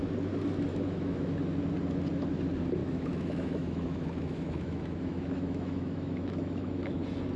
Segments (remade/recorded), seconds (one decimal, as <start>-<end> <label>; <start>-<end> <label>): 0.0-0.7 recorded; 0.7-1.3 remade; 1.3-2.8 recorded; 2.8-7.0 remade; 7.0-7.4 recorded